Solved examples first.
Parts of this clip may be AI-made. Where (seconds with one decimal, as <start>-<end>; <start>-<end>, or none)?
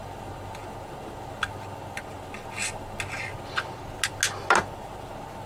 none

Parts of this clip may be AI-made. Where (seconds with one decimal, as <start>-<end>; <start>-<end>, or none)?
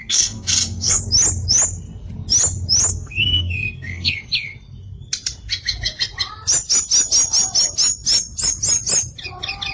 0.0-1.0; 2.9-4.1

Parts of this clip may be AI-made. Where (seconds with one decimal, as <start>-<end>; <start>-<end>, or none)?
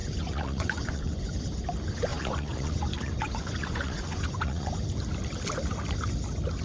0.0-1.3; 2.1-4.7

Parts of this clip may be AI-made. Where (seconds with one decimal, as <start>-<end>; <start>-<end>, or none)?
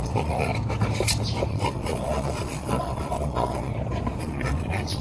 0.0-0.5; 1.5-3.7; 4.2-5.0